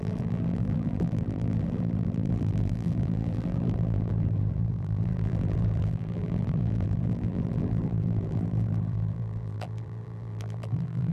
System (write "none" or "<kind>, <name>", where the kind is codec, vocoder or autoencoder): vocoder, BigVGAN v2